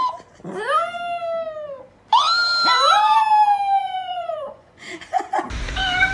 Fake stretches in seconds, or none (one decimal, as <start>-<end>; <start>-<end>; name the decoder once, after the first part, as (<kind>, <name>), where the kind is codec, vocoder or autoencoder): 3.8-5.5 (vocoder, Vocos)